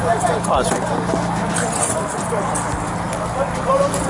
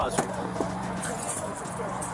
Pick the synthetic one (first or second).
second